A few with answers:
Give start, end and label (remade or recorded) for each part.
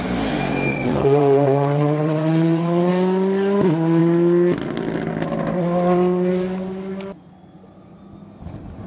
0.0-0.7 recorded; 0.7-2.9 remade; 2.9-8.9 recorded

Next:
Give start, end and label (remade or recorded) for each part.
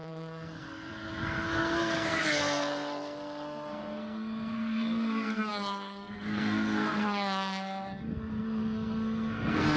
0.0-9.8 remade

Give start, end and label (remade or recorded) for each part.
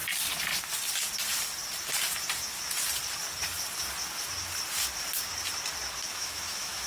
0.0-6.1 recorded; 6.1-6.9 remade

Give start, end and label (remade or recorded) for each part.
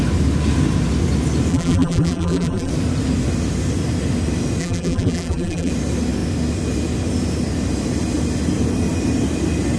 0.0-1.5 recorded; 1.5-2.7 remade; 2.7-4.6 recorded; 4.6-5.7 remade; 5.7-9.8 recorded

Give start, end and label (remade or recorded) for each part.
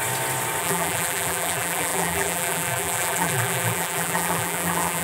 0.0-0.6 recorded; 0.6-5.0 remade